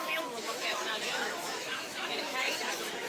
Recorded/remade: remade